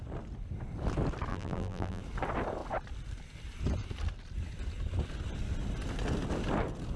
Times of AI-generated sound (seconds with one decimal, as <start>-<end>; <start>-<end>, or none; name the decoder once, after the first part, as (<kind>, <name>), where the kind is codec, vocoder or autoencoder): 1.3-2.0 (vocoder, BigVGAN v2)